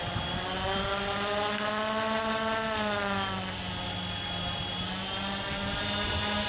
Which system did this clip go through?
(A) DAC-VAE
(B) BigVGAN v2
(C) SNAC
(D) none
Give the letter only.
D